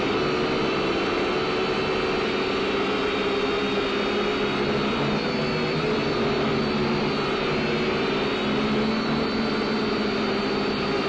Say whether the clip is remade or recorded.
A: recorded